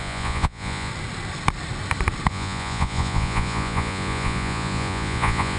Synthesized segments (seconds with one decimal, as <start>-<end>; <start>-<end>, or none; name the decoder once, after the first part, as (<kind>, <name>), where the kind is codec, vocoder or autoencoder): 0.0-0.9 (vocoder, Vocos); 2.3-5.6

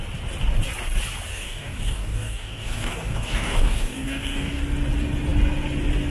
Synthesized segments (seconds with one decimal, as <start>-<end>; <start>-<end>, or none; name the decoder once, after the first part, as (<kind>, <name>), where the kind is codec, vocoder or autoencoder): 1.3-4.6 (codec, DAC)

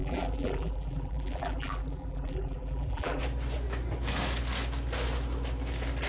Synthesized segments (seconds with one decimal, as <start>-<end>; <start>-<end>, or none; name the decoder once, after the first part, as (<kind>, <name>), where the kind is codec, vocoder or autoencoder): 0.0-3.2 (vocoder, BigVGAN v2)

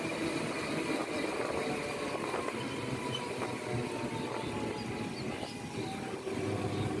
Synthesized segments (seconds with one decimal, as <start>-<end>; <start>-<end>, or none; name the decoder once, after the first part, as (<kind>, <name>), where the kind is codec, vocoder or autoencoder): none

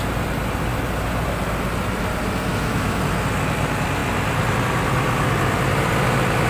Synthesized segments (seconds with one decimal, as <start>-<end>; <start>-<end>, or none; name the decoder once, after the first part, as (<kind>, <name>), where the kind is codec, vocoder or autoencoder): 2.5-3.0 (autoencoder, DAC-VAE)

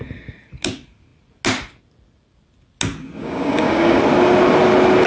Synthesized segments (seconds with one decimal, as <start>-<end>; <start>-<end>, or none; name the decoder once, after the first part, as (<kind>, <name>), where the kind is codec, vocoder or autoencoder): 3.2-4.0 (codec, DAC)

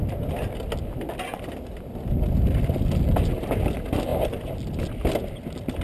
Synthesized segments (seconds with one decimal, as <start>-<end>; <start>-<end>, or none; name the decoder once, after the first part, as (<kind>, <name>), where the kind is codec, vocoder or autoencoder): none

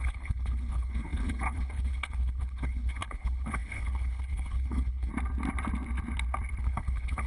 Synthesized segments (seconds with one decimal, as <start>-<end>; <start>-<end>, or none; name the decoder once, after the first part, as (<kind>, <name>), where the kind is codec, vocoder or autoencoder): 0.0-5.1 (codec, HILCodec); 6.6-7.3